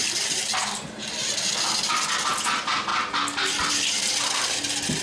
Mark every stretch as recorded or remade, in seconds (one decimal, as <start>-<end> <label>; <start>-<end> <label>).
0.0-5.0 recorded